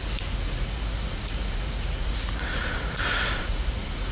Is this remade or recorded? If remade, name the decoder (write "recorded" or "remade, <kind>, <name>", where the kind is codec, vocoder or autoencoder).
remade, vocoder, Vocos